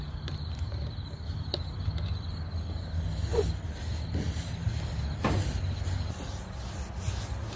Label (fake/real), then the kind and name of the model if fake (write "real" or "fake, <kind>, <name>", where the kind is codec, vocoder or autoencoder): real